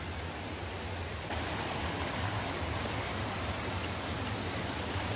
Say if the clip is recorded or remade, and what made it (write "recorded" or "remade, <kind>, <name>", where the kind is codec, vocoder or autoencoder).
recorded